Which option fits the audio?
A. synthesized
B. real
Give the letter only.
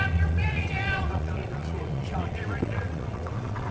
A